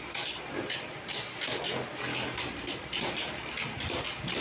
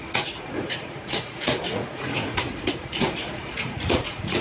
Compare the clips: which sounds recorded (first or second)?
first